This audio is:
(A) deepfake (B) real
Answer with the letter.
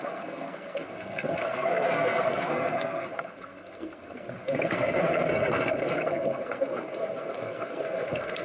A